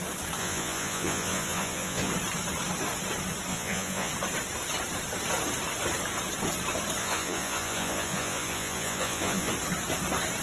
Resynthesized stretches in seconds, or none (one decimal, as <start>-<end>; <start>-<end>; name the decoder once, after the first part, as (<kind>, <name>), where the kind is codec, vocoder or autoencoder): 0.4-2.1 (vocoder, Vocos); 3.5-4.1; 7.0-9.5